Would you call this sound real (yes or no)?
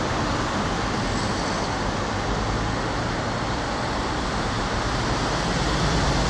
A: yes